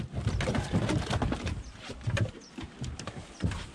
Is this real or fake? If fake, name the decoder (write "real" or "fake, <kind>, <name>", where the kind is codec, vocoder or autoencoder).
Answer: real